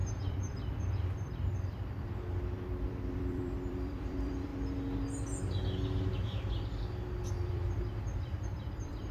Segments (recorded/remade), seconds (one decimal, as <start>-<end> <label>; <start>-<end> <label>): 0.0-4.5 remade; 4.5-7.3 recorded; 7.3-9.1 remade